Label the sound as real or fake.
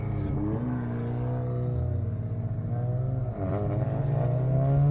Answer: real